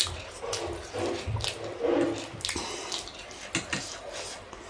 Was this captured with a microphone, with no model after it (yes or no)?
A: yes